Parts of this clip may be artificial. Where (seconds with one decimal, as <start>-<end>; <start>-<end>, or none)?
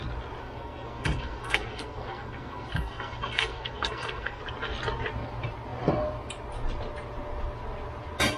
0.4-4.4